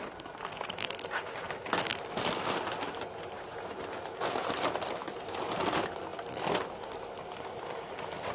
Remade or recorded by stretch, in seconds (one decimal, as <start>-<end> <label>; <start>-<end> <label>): 0.0-3.5 recorded; 3.5-4.7 remade; 4.7-6.1 recorded; 6.1-6.6 remade; 6.6-8.3 recorded